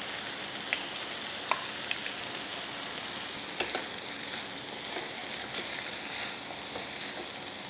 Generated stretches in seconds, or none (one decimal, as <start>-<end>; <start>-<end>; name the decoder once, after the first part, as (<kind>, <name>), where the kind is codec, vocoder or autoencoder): none